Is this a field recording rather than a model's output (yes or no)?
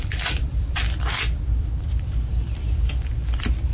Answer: no